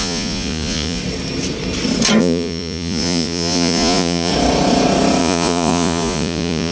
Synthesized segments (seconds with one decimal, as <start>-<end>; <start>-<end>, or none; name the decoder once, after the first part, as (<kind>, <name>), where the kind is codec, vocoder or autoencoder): 0.0-1.0 (vocoder, Vocos); 2.2-4.3; 5.2-6.7